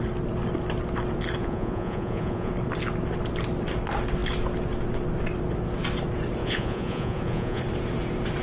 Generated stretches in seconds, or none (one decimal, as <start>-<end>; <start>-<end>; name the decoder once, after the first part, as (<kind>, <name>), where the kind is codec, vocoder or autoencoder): 1.4-2.5 (vocoder, Vocos); 6.4-7.6